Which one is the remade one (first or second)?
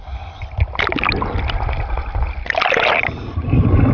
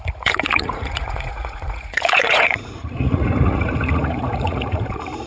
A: second